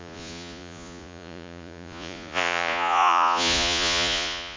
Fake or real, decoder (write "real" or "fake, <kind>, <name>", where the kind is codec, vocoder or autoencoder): fake, vocoder, Vocos